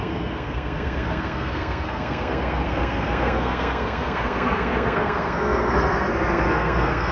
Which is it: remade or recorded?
remade